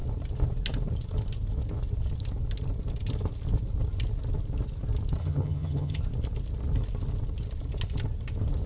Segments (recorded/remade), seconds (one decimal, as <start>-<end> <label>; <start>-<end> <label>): 0.0-5.2 recorded; 5.2-6.0 remade; 6.0-8.7 recorded